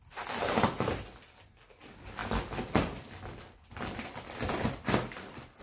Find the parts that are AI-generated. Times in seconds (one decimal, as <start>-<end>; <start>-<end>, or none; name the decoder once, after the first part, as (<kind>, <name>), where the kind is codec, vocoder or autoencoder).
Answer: 2.2-5.6 (vocoder, BigVGAN v2)